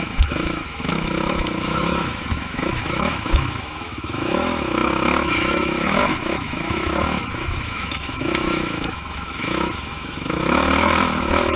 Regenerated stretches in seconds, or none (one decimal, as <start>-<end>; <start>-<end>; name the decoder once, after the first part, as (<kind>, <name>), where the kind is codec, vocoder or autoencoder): 0.0-11.6 (autoencoder, DAC-VAE)